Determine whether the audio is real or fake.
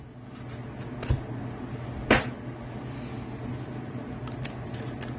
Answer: real